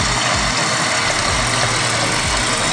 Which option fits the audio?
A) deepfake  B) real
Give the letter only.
B